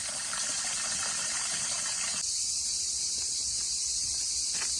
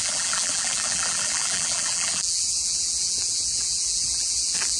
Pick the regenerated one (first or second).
second